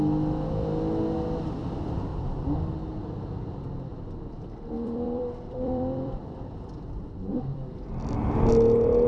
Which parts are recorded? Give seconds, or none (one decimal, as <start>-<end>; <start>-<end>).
0.0-2.1; 2.6-3.9; 8.5-9.1